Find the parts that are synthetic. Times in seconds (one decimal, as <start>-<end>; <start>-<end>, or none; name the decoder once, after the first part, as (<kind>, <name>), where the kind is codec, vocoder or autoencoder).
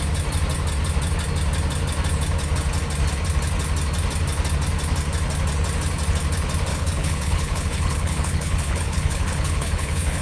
6.7-10.2 (codec, HILCodec)